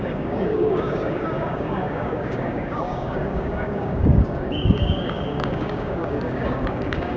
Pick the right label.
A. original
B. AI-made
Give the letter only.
B